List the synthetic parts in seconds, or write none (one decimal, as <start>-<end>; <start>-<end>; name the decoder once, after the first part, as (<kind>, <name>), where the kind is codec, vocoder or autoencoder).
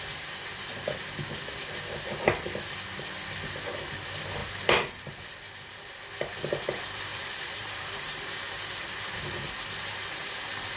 4.4-5.2 (vocoder, BigVGAN v2); 7.1-9.5